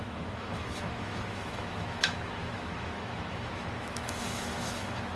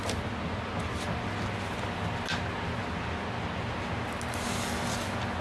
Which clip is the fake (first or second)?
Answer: first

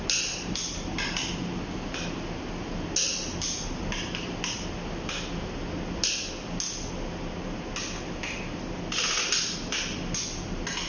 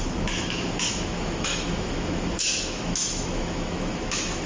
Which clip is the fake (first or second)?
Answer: second